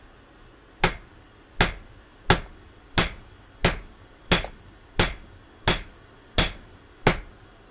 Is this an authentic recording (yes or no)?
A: yes